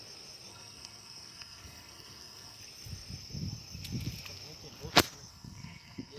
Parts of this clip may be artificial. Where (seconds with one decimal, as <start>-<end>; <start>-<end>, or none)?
0.5-2.6; 5.3-6.2